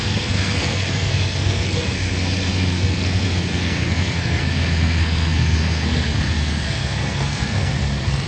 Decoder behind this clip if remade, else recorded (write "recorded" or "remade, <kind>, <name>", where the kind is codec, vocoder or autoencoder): remade, codec, SNAC